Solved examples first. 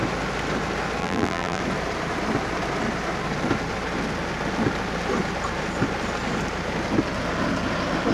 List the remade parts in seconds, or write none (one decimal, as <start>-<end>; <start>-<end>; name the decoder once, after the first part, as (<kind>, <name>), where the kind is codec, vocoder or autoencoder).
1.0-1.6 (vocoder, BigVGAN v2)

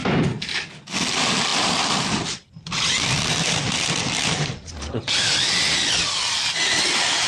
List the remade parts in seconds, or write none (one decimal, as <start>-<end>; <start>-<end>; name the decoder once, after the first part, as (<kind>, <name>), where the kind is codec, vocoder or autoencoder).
0.0-0.5 (vocoder, BigVGAN v2)

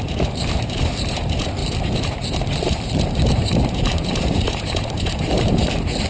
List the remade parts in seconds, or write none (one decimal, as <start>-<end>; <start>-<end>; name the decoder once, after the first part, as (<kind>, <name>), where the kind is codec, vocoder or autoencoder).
0.0-6.1 (vocoder, BigVGAN v2)

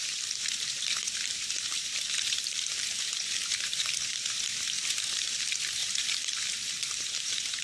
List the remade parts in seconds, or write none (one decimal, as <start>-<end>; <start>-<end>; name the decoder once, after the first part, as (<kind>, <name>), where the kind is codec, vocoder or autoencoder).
0.0-7.6 (vocoder, BigVGAN v2)

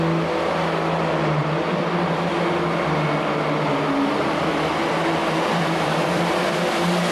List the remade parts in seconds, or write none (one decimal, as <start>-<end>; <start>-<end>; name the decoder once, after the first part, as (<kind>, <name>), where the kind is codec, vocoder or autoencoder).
1.4-2.3 (vocoder, BigVGAN v2); 5.2-6.2

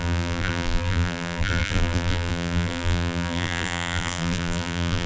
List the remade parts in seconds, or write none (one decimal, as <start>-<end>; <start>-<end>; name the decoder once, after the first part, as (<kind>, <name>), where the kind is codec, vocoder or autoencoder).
0.0-5.1 (vocoder, BigVGAN v2)

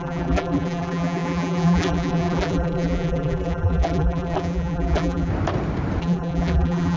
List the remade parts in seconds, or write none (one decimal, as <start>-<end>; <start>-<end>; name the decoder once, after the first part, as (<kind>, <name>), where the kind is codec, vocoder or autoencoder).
0.0-5.3 (vocoder, BigVGAN v2); 6.0-7.0

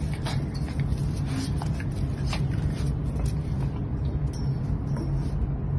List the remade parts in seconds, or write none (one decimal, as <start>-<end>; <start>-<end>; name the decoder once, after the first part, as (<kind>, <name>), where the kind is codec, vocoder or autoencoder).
none